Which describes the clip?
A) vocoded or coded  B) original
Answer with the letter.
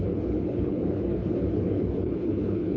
A